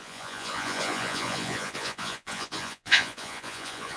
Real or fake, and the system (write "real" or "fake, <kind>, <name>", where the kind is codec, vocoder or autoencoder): fake, vocoder, Vocos